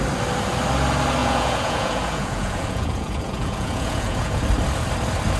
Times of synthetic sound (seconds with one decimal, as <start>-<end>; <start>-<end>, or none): 1.2-4.4